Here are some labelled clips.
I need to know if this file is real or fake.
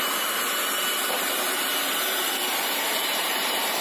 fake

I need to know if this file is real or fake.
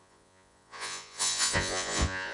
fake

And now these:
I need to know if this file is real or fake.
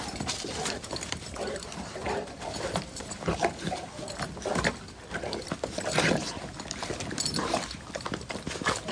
fake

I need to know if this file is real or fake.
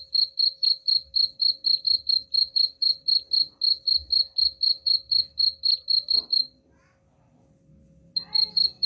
real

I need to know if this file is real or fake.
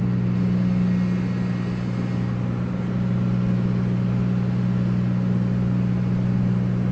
real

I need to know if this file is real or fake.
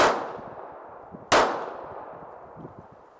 real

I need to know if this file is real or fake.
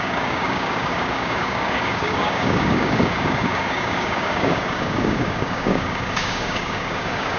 fake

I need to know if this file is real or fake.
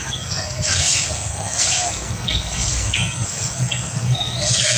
fake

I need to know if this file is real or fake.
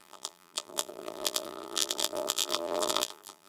fake